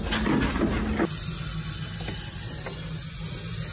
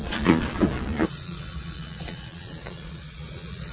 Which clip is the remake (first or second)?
second